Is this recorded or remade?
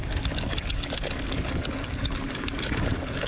remade